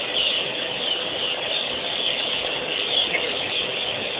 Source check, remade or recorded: remade